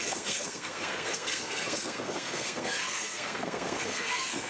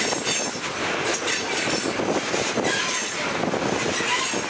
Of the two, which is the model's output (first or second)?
first